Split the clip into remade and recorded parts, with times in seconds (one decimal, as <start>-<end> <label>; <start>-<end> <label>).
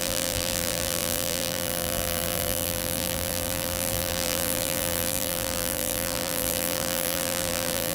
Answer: 0.0-7.9 remade